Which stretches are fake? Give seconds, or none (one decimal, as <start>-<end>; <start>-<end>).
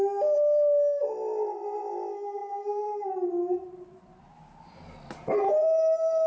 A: 2.4-4.2